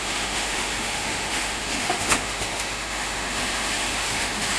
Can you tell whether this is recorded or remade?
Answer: remade